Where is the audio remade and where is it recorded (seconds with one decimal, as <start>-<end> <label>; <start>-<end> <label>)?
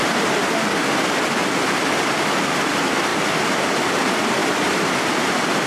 0.0-5.7 recorded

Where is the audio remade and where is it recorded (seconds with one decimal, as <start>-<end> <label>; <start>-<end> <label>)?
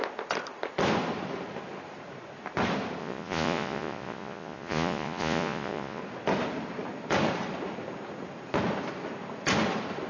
0.0-3.0 recorded; 3.0-6.0 remade; 6.0-10.1 recorded